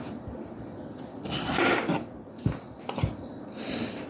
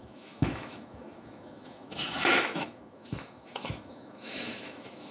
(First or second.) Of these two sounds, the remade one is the second